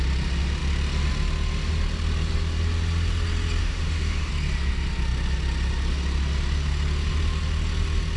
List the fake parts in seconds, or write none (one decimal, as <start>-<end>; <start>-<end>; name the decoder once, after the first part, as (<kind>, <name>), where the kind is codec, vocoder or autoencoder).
3.6-4.3 (autoencoder, DAC-VAE)